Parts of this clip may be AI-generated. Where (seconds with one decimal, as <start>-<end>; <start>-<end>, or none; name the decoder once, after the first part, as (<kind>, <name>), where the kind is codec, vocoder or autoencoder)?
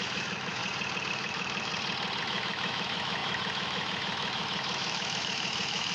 0.0-0.6 (autoencoder, DAC-VAE); 1.1-1.7; 2.2-5.9